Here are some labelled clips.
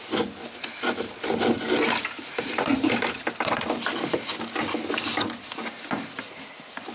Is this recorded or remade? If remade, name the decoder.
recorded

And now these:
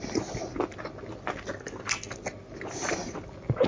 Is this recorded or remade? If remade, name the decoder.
recorded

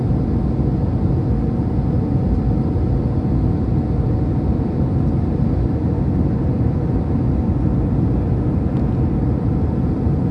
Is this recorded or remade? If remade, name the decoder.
recorded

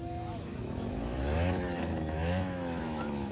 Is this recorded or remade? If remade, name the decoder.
remade, autoencoder, DAC-VAE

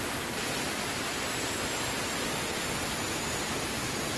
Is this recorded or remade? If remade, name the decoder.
recorded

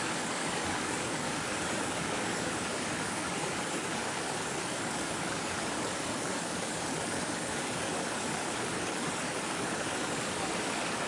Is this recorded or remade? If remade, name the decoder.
remade, codec, DAC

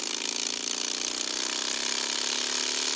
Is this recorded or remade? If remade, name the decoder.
recorded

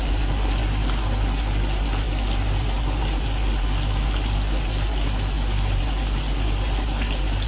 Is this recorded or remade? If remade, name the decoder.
recorded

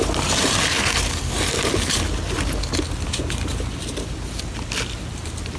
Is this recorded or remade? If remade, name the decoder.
recorded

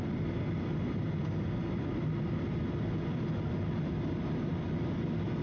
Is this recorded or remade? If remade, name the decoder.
recorded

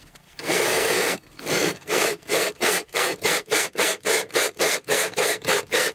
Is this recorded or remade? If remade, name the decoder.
remade, codec, SNAC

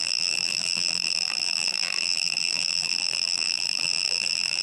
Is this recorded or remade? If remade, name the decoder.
remade, vocoder, BigVGAN v2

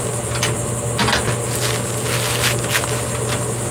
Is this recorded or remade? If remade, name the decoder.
recorded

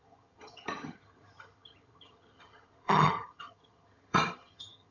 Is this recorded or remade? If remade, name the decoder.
remade, vocoder, HiFi-GAN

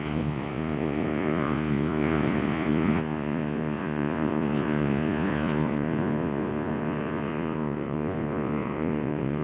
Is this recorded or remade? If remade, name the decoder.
remade, vocoder, Vocos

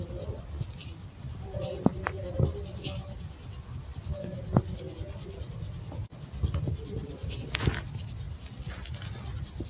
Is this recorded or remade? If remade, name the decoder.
recorded